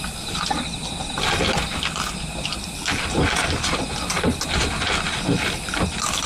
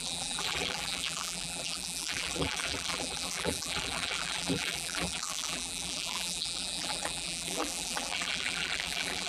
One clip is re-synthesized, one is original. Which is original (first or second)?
first